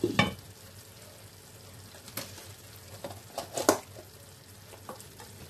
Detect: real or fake real